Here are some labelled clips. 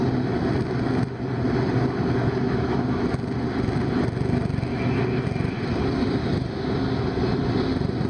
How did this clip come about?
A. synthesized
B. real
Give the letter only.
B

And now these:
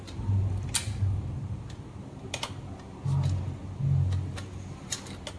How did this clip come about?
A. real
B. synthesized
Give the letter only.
A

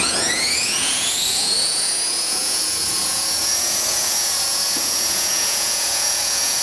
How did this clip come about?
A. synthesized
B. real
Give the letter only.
A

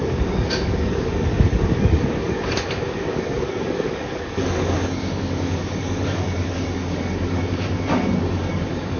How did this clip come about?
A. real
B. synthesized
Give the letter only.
B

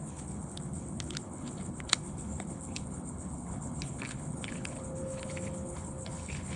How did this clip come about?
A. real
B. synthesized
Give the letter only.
B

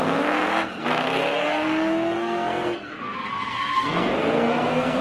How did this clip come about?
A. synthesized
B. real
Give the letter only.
A